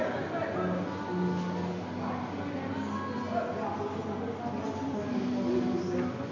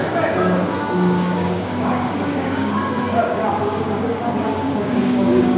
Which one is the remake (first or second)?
second